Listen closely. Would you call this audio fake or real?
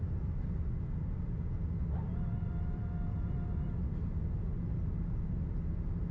real